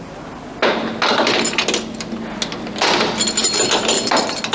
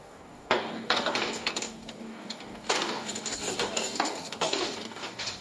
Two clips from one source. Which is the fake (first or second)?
second